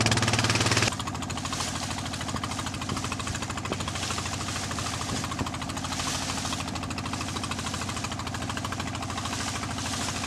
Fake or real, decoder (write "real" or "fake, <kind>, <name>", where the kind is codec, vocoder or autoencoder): real